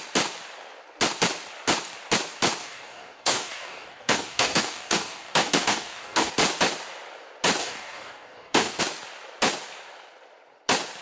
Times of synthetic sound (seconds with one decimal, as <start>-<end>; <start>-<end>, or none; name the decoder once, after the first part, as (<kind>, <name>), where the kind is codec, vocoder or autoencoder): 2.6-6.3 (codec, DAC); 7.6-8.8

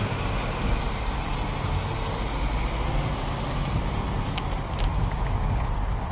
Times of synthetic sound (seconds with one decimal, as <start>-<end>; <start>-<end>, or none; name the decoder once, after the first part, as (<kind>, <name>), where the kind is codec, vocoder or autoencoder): 4.9-5.6 (codec, DAC)

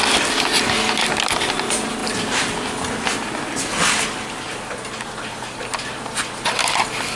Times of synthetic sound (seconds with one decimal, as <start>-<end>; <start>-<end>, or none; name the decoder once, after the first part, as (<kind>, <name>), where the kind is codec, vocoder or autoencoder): none